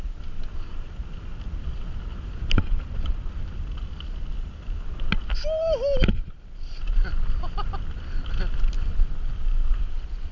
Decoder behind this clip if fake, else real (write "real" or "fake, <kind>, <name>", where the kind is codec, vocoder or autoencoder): real